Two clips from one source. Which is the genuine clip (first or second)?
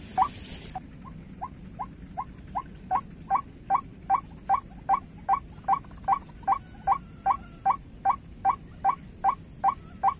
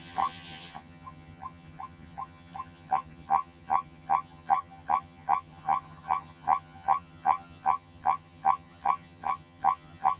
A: first